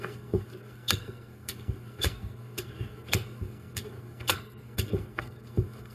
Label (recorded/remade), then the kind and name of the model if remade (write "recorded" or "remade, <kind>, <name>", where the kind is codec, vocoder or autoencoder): remade, codec, SNAC